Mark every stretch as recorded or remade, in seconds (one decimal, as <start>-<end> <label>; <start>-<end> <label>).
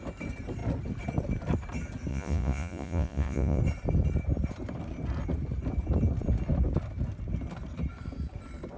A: 0.0-2.1 recorded; 2.1-3.6 remade; 3.6-8.8 recorded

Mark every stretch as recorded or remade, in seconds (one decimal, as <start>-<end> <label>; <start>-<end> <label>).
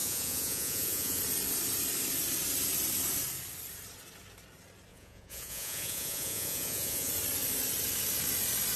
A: 0.0-1.2 remade; 1.2-4.9 recorded; 4.9-7.1 remade; 7.1-8.8 recorded